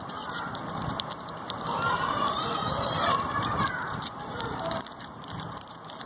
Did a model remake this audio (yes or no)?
yes